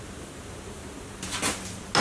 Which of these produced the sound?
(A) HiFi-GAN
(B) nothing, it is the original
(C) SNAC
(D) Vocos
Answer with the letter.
B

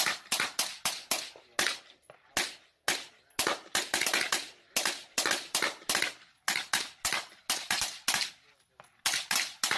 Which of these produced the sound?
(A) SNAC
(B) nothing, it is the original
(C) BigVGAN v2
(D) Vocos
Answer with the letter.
B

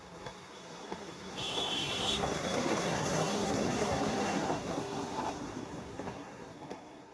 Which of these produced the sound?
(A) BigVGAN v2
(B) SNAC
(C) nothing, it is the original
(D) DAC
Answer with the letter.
B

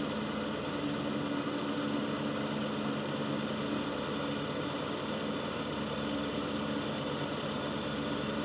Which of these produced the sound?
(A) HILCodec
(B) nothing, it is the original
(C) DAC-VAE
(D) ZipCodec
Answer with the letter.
B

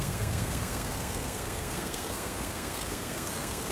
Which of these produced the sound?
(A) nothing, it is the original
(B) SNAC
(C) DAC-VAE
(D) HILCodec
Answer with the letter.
B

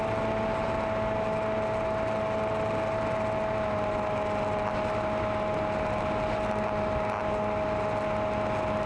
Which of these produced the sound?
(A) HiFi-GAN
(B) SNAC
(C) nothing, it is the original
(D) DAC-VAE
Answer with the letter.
C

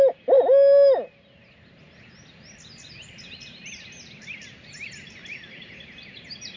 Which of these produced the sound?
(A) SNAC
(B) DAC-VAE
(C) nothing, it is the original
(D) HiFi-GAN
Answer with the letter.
C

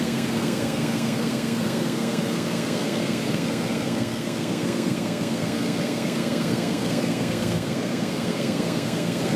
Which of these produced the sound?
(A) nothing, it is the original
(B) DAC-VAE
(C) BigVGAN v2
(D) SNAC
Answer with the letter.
D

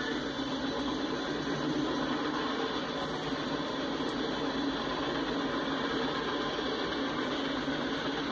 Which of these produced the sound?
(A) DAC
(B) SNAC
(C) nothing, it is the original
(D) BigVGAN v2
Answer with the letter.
C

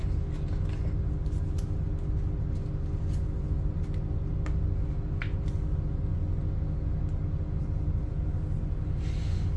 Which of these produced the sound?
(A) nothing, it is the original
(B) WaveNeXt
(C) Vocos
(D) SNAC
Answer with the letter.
A